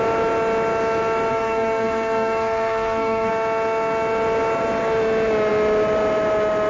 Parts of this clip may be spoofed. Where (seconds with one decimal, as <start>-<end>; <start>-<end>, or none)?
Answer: 1.3-3.3